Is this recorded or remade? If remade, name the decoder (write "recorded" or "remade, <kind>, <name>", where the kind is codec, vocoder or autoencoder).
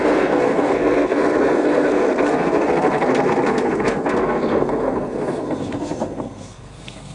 remade, codec, SNAC